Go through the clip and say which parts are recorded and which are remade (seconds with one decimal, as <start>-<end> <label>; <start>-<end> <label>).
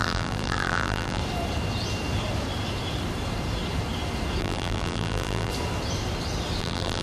0.0-1.2 remade; 1.2-4.4 recorded; 4.4-5.5 remade; 5.5-6.6 recorded; 6.6-7.0 remade